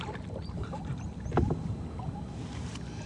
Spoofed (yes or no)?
no